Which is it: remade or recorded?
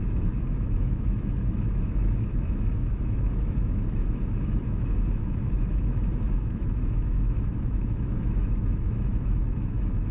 remade